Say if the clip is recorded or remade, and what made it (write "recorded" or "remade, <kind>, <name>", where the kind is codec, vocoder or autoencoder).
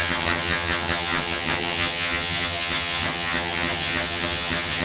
remade, vocoder, HiFi-GAN